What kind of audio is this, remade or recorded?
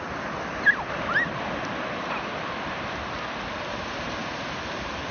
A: recorded